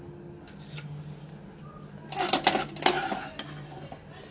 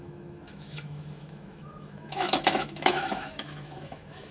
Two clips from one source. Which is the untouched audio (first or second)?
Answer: first